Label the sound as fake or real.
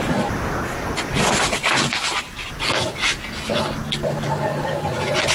real